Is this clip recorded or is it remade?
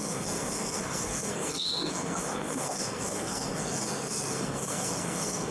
remade